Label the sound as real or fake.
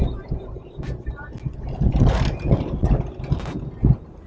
real